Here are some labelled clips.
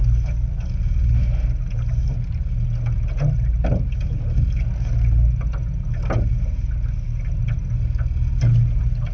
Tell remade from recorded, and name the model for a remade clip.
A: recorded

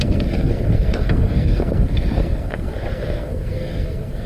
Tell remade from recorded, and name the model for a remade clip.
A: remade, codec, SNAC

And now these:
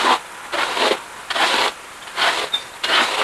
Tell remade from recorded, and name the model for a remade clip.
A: recorded